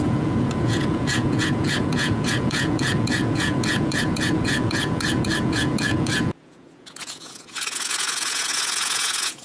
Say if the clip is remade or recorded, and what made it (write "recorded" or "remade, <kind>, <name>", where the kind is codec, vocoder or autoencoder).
remade, vocoder, Vocos